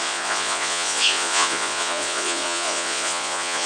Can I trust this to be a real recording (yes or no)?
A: no